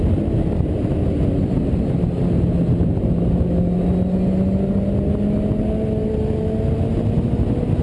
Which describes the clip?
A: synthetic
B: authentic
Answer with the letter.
B